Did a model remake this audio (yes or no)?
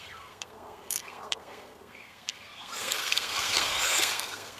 yes